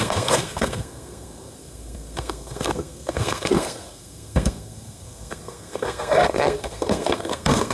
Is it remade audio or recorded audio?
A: remade